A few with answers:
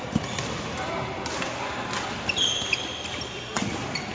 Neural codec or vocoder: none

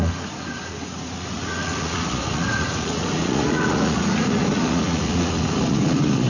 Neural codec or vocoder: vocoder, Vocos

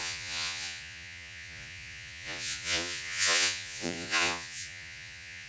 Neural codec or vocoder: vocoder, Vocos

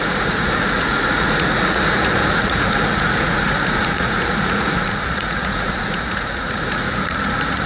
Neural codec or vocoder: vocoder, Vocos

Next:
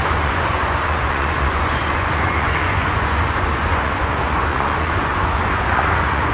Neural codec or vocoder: vocoder, Vocos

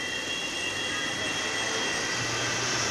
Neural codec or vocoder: none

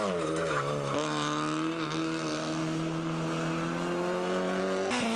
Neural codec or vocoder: none